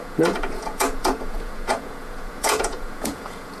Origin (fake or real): fake